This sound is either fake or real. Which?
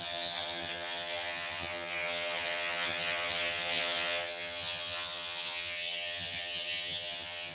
fake